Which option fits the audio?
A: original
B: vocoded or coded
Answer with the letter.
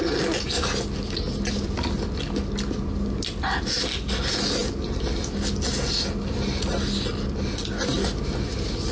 A